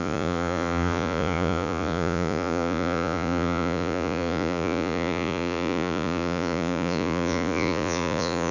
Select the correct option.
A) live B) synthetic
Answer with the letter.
B